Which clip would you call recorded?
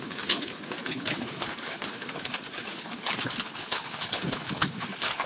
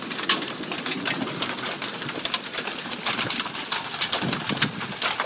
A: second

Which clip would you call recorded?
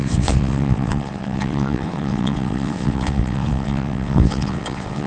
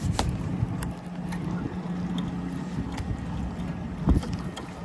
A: second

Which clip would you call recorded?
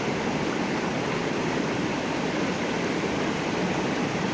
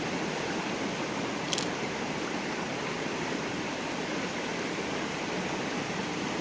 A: first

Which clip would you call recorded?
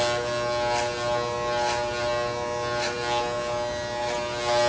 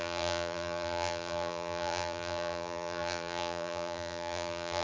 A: first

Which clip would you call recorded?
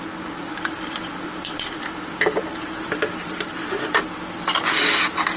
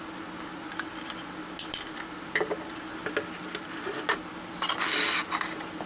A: second